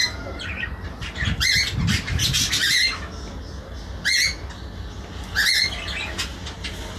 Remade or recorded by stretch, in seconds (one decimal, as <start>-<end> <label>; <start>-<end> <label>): 0.0-2.8 remade; 2.8-6.3 recorded; 6.3-7.0 remade